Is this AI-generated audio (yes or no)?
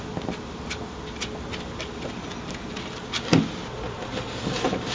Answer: no